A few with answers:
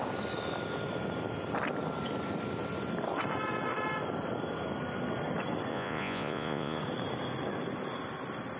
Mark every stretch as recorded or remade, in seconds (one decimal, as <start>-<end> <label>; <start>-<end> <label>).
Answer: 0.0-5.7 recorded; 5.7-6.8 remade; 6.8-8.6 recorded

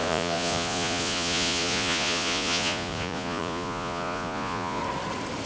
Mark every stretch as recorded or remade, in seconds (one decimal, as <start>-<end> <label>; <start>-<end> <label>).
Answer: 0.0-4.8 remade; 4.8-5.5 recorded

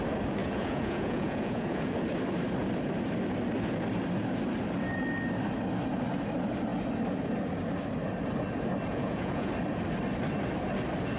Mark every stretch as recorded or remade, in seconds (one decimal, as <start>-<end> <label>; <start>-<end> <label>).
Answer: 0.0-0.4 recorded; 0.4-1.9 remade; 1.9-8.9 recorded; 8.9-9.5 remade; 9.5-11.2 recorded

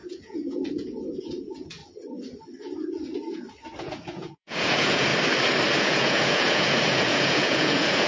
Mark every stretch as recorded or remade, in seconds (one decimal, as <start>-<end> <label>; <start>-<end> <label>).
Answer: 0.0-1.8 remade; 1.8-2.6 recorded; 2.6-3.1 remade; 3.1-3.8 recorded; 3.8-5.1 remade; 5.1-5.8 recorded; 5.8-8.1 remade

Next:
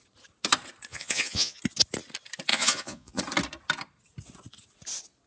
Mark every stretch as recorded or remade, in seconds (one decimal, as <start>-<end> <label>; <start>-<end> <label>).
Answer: 0.0-0.9 recorded; 0.9-1.6 remade; 1.6-2.5 recorded; 2.5-3.2 remade; 3.2-5.3 recorded

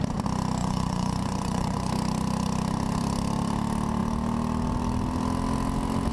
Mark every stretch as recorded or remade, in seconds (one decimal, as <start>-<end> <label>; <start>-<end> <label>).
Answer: 0.0-0.6 recorded; 0.6-1.9 remade; 1.9-6.1 recorded

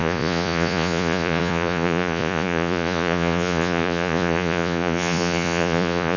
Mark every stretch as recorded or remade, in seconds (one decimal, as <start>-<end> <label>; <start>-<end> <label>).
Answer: 0.0-6.2 remade

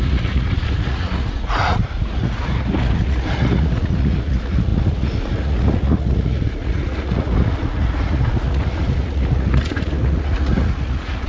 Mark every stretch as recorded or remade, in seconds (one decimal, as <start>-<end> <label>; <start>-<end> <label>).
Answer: 0.0-11.3 remade